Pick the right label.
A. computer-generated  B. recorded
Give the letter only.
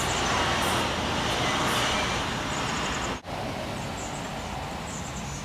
B